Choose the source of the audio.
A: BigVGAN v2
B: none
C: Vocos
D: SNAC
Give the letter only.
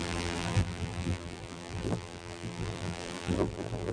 A